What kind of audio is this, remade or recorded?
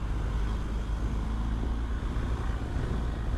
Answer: recorded